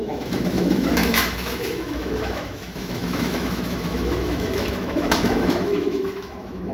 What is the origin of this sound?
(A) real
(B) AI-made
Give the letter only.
B